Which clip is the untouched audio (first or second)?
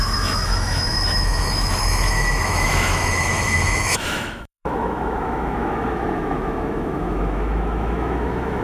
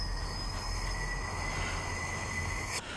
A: second